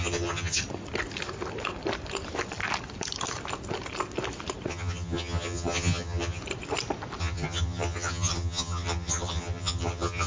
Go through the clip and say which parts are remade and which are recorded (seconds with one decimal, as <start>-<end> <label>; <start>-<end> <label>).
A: 0.0-0.6 remade; 0.6-4.7 recorded; 4.7-6.4 remade; 6.4-7.2 recorded; 7.2-10.3 remade